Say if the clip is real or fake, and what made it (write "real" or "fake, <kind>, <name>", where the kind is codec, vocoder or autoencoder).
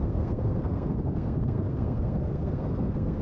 fake, codec, SNAC